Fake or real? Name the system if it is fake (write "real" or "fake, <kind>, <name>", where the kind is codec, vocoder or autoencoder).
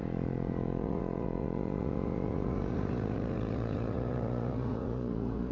fake, vocoder, Vocos